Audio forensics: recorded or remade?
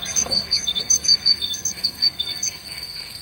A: remade